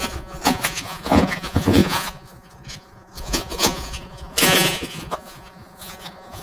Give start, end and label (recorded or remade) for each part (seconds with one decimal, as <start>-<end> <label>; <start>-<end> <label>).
0.0-6.4 remade